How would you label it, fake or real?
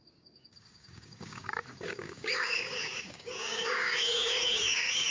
fake